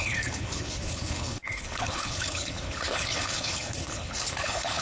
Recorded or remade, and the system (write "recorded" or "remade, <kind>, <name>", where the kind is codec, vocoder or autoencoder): remade, codec, HILCodec